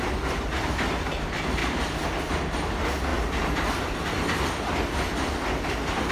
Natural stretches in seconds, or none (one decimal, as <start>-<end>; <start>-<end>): 0.0-6.1